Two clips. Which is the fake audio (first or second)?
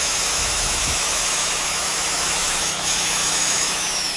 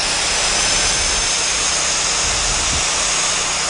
first